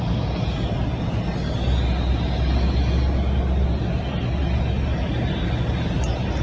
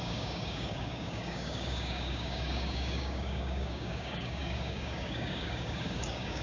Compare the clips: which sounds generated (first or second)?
second